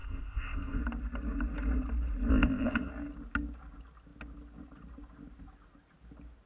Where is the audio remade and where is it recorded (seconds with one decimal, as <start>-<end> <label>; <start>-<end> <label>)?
0.0-0.8 remade; 0.8-2.3 recorded; 2.3-2.9 remade; 2.9-6.5 recorded